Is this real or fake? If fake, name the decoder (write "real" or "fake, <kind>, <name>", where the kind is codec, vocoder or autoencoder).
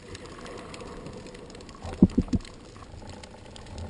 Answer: real